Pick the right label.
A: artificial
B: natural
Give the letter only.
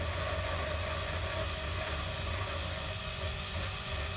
A